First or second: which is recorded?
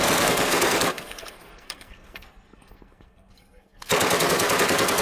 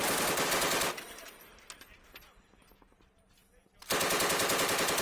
second